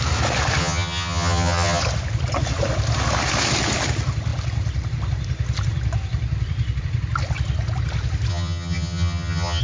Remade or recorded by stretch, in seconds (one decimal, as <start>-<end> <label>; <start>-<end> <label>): 0.0-0.6 recorded; 0.6-1.8 remade; 1.8-8.3 recorded; 8.3-9.6 remade